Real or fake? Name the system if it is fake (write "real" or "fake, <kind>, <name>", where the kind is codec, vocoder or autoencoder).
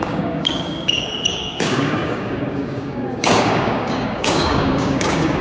fake, codec, DAC